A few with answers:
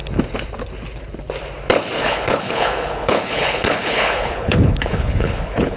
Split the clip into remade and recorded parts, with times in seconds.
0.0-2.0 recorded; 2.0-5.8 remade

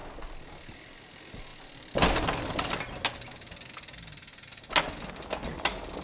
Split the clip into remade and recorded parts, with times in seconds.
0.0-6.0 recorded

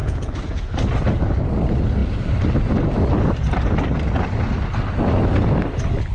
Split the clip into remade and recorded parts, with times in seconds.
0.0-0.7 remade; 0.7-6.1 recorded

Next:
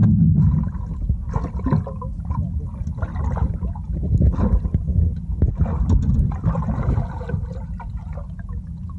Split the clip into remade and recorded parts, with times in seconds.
0.0-9.0 recorded

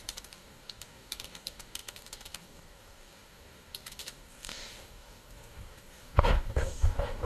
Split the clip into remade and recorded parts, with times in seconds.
0.0-7.3 remade

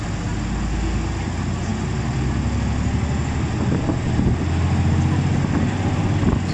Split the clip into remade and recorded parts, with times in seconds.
0.0-6.5 recorded

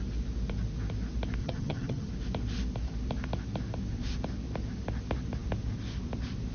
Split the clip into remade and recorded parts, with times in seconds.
0.0-1.4 recorded; 1.4-2.1 remade; 2.1-6.5 recorded

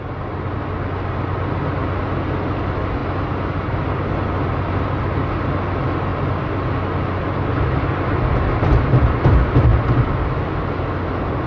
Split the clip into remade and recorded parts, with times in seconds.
0.0-11.5 recorded